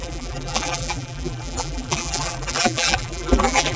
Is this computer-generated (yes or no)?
yes